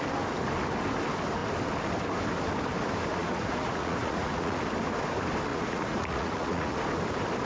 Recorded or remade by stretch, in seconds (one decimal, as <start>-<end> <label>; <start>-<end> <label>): 0.0-3.2 recorded; 3.2-4.6 remade; 4.6-5.5 recorded; 5.5-6.8 remade; 6.8-7.5 recorded